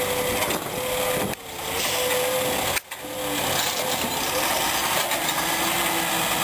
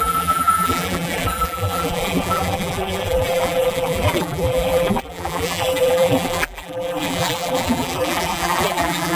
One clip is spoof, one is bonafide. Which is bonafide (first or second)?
first